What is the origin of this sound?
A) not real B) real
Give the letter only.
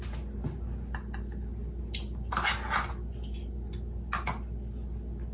B